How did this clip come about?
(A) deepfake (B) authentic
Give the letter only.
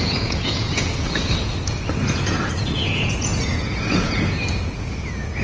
A